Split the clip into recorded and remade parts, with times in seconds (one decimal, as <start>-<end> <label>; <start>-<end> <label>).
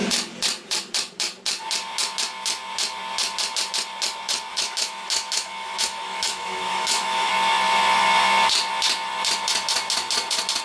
0.0-4.5 recorded; 4.5-7.3 remade; 7.3-10.6 recorded